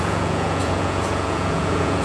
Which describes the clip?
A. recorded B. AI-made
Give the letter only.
B